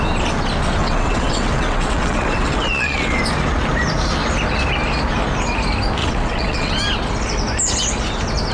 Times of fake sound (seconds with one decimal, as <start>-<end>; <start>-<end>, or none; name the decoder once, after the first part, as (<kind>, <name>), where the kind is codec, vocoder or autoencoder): 0.8-3.2 (vocoder, WaveNeXt); 6.0-6.7